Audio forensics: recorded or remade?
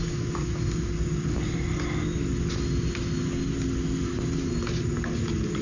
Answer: recorded